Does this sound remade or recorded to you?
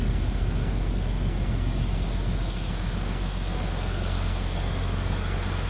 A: remade